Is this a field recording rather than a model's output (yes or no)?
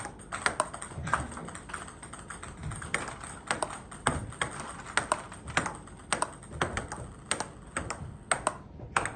yes